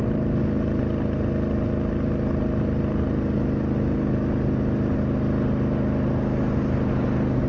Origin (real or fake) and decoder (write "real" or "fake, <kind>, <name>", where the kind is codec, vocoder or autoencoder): real